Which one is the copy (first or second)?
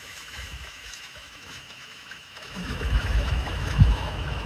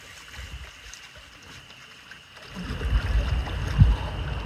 first